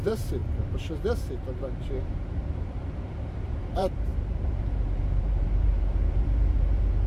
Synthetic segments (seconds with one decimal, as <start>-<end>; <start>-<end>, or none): 0.0-0.4; 2.0-7.1